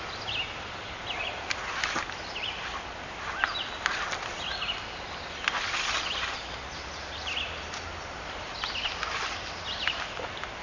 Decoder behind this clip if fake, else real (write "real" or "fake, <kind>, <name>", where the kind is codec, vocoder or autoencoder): real